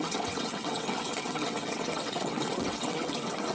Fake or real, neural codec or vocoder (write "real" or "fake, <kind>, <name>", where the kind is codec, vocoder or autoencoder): fake, vocoder, WaveNeXt